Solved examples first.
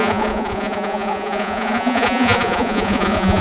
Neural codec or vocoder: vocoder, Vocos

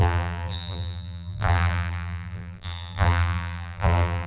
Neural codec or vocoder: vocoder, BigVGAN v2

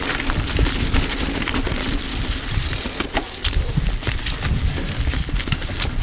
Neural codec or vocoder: none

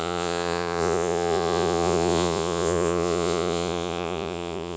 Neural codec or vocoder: vocoder, Vocos